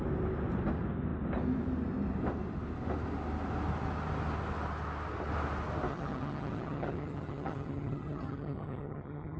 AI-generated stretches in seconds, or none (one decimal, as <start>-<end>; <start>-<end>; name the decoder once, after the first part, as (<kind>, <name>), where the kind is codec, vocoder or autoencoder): 5.9-9.4 (vocoder, HiFi-GAN)